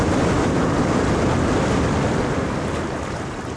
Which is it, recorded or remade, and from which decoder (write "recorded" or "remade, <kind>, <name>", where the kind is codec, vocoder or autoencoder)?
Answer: recorded